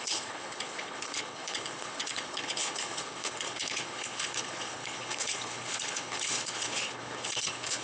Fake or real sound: fake